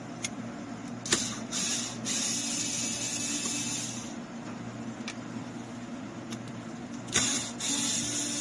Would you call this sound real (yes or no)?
yes